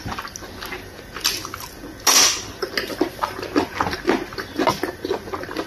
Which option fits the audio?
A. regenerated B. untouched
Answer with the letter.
B